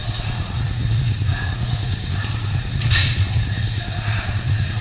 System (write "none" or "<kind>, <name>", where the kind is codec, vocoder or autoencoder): vocoder, Vocos